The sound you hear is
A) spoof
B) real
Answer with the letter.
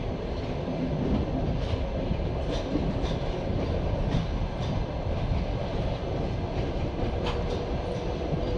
B